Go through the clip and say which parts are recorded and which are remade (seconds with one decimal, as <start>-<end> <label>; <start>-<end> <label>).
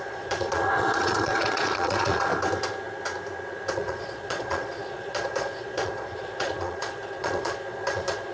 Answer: 0.0-2.3 remade; 2.3-3.7 recorded; 3.7-8.3 remade